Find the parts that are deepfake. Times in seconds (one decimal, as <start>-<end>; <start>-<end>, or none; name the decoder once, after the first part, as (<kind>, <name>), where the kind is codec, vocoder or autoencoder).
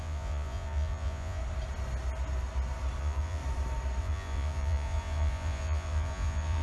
0.0-1.4 (vocoder, Vocos); 3.0-3.4; 4.0-6.6